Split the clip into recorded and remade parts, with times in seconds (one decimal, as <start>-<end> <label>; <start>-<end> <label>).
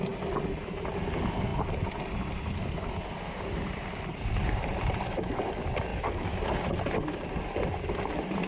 0.0-8.5 recorded